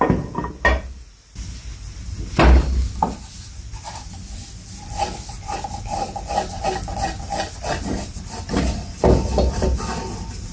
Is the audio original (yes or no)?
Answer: yes